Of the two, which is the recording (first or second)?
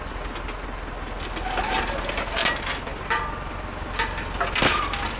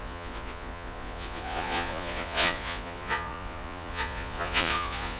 first